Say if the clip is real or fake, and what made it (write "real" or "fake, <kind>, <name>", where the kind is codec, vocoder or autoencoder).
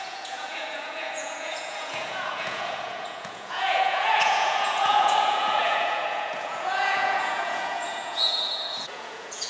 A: fake, vocoder, Vocos